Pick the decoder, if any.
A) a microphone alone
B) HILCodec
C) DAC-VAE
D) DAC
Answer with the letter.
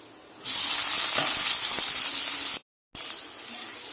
A